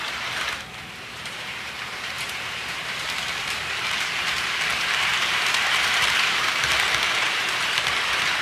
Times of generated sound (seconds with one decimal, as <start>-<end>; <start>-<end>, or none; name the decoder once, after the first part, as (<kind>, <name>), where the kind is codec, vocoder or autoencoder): 0.0-5.1 (vocoder, BigVGAN v2); 5.7-8.4